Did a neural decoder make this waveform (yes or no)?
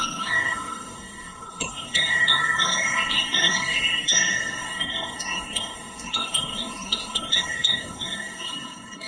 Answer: yes